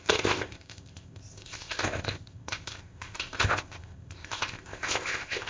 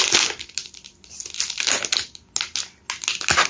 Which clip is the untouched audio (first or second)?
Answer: second